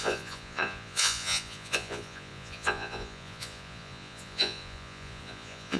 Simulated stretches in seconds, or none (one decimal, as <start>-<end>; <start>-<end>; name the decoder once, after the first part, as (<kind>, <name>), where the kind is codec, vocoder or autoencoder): 0.0-5.8 (vocoder, Vocos)